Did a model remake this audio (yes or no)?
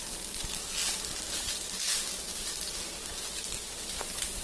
no